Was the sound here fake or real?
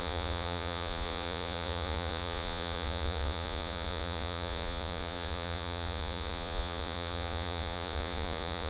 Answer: fake